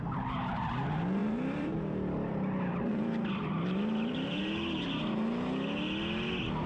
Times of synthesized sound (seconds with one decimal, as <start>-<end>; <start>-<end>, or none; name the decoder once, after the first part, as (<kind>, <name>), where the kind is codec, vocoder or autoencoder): 1.2-4.4 (vocoder, BigVGAN v2)